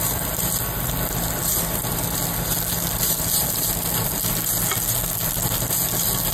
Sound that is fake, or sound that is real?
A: real